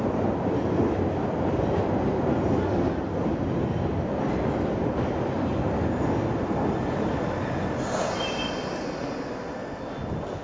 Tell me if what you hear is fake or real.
real